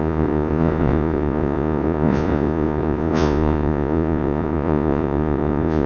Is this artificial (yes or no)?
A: yes